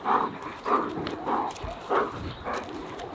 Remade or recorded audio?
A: recorded